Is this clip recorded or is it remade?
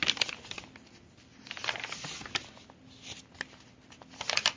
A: recorded